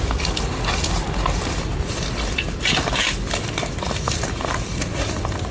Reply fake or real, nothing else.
real